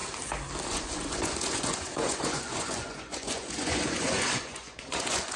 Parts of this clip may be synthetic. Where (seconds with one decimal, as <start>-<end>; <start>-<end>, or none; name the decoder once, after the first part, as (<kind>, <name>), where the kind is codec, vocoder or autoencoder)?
0.7-5.4 (vocoder, Vocos)